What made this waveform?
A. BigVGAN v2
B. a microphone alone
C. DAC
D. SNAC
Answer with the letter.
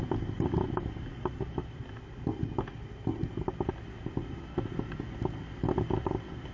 B